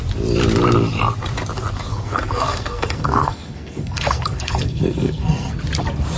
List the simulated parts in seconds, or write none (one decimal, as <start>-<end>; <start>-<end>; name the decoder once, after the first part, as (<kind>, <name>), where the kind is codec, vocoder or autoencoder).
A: 1.9-5.6 (codec, SNAC)